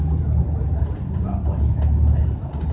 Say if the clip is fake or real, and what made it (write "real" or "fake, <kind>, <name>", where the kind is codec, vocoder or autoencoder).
real